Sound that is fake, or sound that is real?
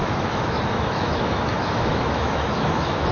fake